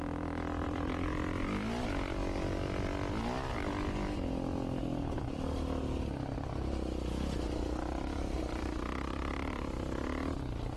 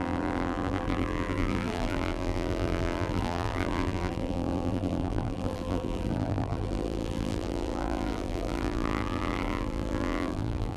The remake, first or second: second